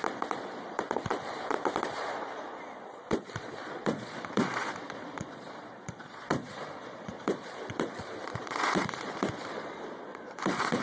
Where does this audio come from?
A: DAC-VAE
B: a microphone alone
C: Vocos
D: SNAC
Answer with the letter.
C